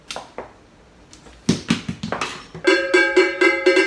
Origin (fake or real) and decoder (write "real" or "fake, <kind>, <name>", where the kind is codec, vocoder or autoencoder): real